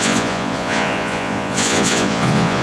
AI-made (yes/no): yes